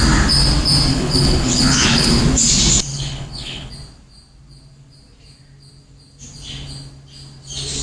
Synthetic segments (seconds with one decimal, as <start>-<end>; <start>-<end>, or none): 0.9-2.2; 2.9-3.7